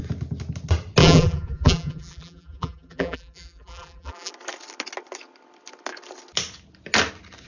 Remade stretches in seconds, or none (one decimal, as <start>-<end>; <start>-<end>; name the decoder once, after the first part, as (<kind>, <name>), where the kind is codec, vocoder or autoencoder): 1.0-4.3 (vocoder, BigVGAN v2)